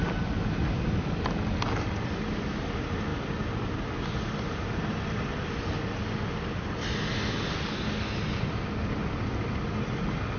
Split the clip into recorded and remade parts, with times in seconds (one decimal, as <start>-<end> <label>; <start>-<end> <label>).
0.0-10.4 recorded